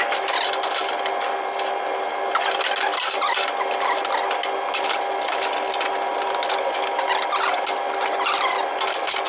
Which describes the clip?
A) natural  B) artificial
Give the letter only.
A